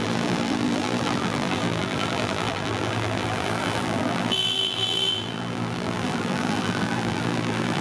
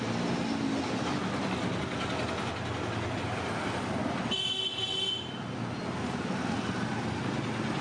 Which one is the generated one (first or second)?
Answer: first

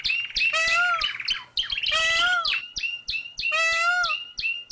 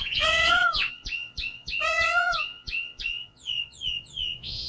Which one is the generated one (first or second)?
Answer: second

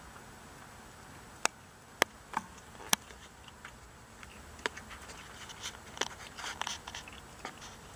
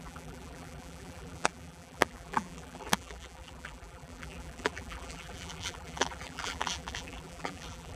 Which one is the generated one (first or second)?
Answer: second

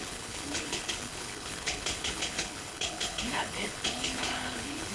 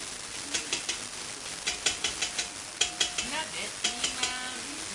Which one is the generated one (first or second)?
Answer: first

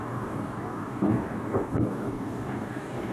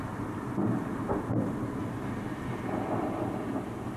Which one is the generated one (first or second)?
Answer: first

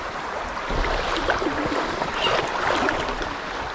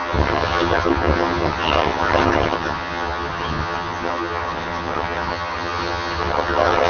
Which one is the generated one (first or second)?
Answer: second